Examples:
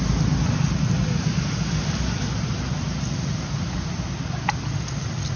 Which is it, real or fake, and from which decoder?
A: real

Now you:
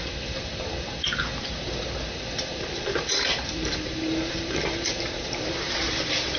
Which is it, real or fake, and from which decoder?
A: fake, vocoder, BigVGAN v2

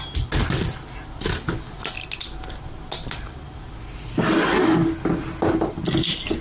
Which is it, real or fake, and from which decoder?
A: real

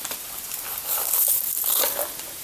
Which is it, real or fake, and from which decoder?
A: fake, vocoder, BigVGAN v2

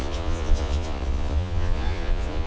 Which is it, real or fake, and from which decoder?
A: fake, vocoder, Vocos